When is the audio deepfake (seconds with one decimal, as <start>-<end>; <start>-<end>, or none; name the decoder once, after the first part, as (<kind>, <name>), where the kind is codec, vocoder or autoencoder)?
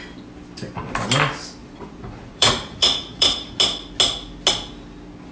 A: 1.6-3.6 (vocoder, Vocos)